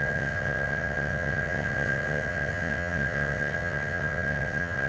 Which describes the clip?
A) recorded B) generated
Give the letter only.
B